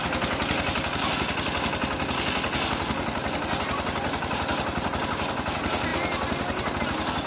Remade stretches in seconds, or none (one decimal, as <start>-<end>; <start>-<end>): none

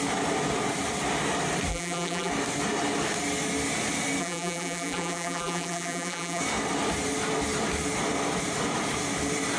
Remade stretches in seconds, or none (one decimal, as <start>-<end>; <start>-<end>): 1.7-2.3; 4.2-6.4

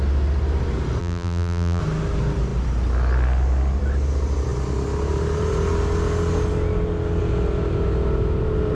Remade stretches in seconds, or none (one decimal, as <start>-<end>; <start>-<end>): 1.0-1.8

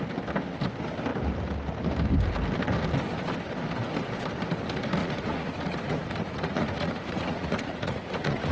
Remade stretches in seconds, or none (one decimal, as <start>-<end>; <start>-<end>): 5.0-8.5

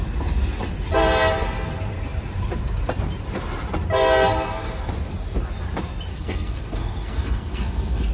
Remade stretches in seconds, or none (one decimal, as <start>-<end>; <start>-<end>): 6.1-8.1

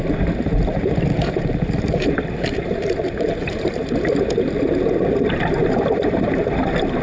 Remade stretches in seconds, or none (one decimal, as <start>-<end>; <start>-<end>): 0.5-4.3; 5.6-6.5

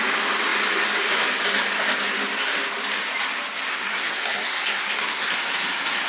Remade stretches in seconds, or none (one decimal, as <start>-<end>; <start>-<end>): 3.7-5.3

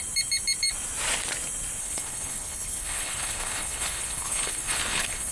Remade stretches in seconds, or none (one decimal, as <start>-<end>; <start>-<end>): 1.8-5.3